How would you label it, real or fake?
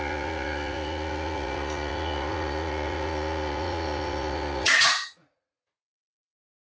fake